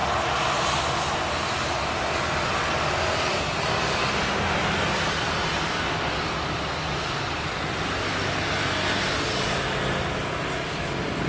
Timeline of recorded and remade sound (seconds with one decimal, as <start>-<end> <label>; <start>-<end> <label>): 0.0-11.3 recorded